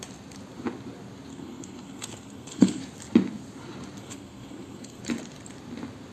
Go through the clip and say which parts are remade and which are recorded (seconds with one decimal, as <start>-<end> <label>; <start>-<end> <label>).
0.0-1.3 recorded; 1.3-2.8 remade; 2.8-4.0 recorded; 4.0-5.0 remade; 5.0-6.1 recorded